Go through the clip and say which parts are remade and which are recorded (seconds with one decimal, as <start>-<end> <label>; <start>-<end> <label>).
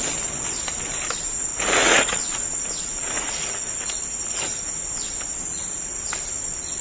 0.0-1.5 recorded; 1.5-4.0 remade; 4.0-4.5 recorded; 4.5-5.1 remade; 5.1-6.8 recorded